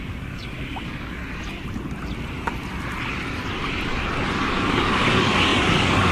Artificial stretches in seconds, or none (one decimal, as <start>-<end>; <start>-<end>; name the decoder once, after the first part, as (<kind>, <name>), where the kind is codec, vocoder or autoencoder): 0.0-1.2 (codec, DAC); 4.5-6.1